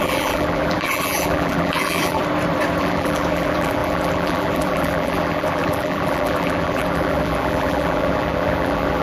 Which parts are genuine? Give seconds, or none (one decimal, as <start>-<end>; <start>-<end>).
2.2-2.8